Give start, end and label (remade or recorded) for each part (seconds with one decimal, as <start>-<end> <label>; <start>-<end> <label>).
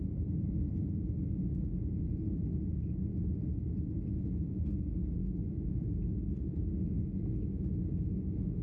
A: 0.0-5.2 recorded; 5.2-6.2 remade; 6.2-8.6 recorded